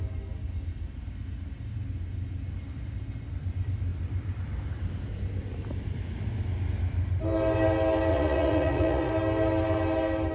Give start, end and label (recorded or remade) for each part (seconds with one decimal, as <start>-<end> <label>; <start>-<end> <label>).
0.0-8.1 recorded; 8.1-9.1 remade; 9.1-10.3 recorded